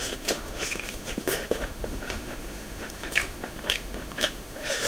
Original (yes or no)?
no